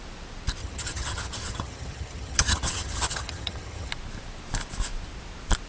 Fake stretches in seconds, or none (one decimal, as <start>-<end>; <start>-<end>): 0.6-3.9